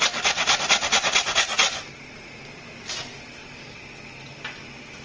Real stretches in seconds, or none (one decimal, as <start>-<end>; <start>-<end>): 0.0-5.0